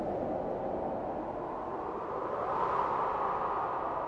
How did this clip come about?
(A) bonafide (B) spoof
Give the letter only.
A